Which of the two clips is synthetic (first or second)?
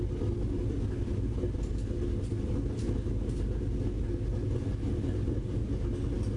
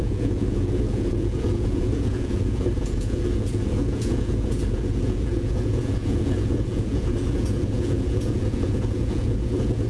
second